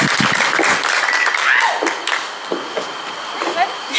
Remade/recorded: recorded